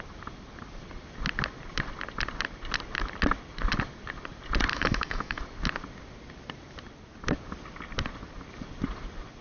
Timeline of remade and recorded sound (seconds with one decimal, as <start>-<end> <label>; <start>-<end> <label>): 0.0-4.7 recorded; 4.7-5.4 remade; 5.4-9.4 recorded